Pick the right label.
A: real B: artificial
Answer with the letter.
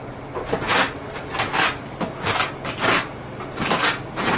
A